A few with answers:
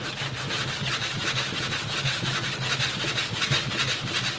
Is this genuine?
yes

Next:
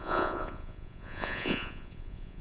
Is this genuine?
no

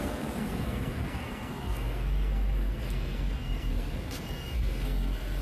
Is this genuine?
no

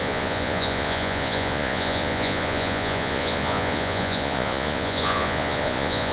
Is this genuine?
no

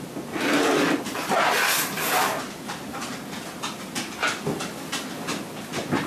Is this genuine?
yes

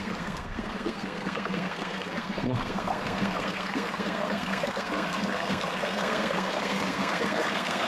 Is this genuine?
no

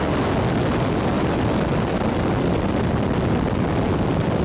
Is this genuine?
yes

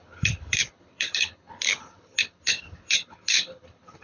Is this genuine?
no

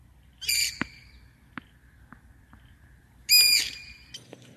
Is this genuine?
yes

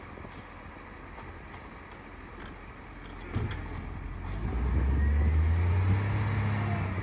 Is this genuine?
yes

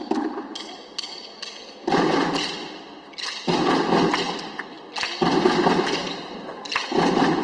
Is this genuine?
yes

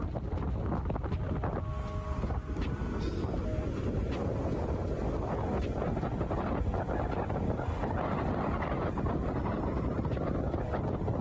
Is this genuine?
yes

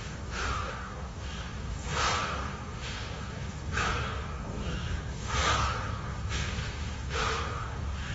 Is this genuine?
no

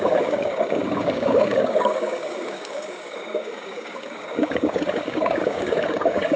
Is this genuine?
no